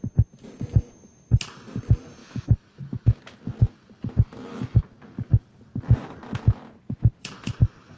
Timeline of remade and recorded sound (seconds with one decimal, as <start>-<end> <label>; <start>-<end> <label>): 0.0-2.2 recorded; 2.2-3.2 remade; 3.2-8.0 recorded